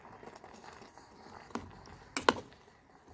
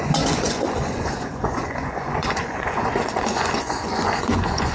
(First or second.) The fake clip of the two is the second